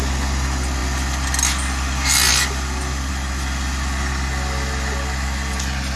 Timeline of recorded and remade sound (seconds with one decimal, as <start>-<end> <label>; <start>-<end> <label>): 0.0-6.0 recorded